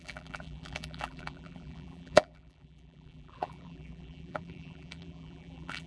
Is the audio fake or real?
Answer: fake